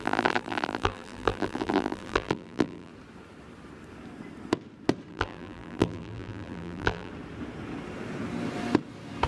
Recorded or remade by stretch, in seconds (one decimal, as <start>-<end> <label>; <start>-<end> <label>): 0.0-2.9 remade; 2.9-5.1 recorded; 5.1-7.1 remade; 7.1-9.3 recorded